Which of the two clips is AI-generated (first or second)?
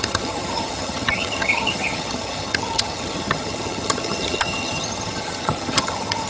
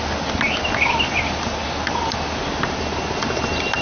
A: first